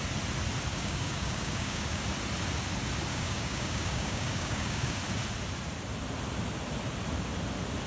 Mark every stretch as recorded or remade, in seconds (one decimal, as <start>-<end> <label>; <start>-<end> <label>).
0.0-0.7 recorded; 0.7-2.0 remade; 2.0-3.1 recorded; 3.1-5.0 remade; 5.0-7.9 recorded